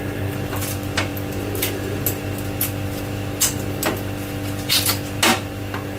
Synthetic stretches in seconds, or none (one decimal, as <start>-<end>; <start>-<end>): none